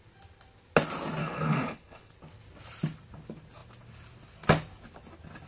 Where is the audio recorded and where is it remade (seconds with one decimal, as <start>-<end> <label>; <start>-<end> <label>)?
0.0-1.2 recorded; 1.2-2.1 remade; 2.1-5.5 recorded